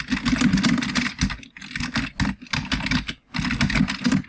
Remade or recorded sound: recorded